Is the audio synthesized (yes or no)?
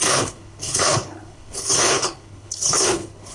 yes